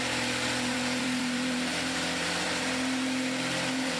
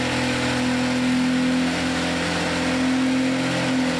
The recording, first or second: second